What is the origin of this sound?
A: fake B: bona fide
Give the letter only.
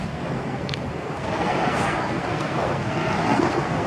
A